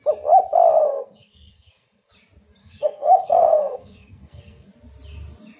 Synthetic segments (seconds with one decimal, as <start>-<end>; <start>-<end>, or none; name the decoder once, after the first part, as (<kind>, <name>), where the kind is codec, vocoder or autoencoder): 0.9-2.1 (codec, SNAC); 2.6-4.7